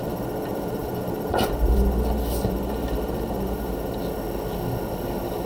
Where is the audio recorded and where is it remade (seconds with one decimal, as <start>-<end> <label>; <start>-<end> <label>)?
0.0-5.5 recorded